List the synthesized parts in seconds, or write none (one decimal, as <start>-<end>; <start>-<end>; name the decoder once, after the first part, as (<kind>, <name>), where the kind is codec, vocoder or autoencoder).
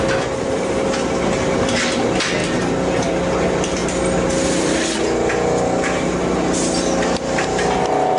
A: none